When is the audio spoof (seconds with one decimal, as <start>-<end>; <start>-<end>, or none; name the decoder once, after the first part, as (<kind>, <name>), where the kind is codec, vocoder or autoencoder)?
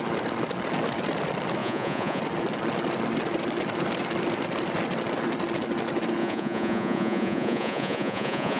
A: 1.6-2.2 (vocoder, Vocos); 6.2-8.6